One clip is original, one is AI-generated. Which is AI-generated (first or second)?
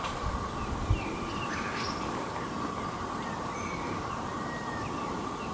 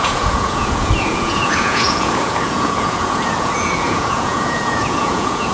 second